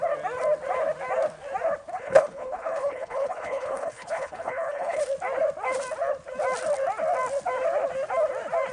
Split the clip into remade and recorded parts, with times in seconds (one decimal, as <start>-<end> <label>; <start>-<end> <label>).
0.0-1.9 recorded; 1.9-5.0 remade; 5.0-8.7 recorded